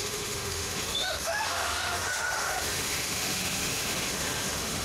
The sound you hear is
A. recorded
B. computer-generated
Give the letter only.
B